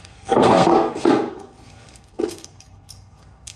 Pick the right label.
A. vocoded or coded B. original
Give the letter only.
A